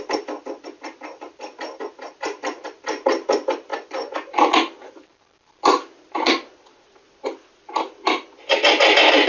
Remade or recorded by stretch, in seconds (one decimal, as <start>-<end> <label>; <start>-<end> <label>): 0.0-9.3 recorded